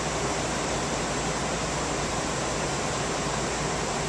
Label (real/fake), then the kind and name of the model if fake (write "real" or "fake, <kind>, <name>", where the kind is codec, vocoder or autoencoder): fake, vocoder, BigVGAN v2